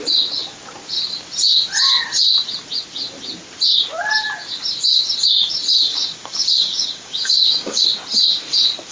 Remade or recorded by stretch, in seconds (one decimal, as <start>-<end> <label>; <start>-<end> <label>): 0.0-5.9 recorded; 5.9-7.8 remade; 7.8-8.9 recorded